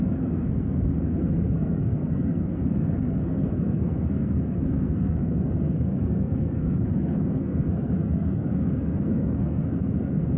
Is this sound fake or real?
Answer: fake